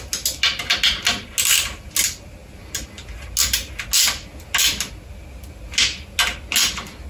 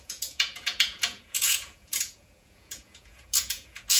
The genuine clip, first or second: first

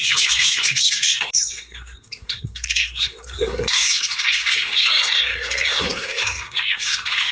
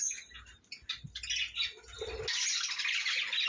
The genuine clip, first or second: second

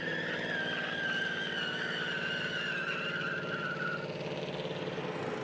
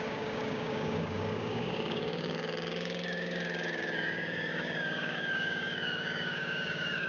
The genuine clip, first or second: first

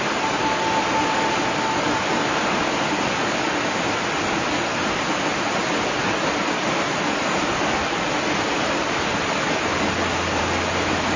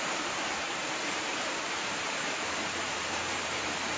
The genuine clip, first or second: first